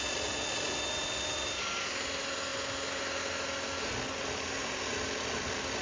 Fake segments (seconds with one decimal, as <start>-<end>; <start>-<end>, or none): none